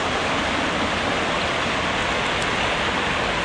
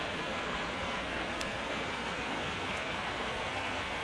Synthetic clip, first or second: second